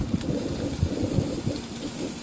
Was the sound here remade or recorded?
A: recorded